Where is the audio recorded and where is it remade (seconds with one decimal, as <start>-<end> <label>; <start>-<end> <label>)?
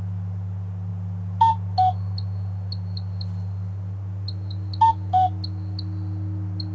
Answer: 0.0-6.7 recorded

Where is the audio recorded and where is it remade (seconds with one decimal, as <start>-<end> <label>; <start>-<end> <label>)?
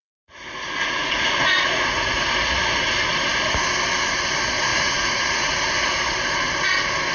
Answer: 0.0-2.1 remade; 2.1-4.7 recorded; 4.7-5.7 remade; 5.7-7.1 recorded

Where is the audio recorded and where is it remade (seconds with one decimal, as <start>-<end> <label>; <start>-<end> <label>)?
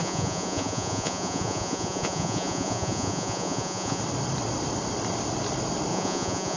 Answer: 0.0-4.0 remade; 4.0-5.9 recorded; 5.9-6.6 remade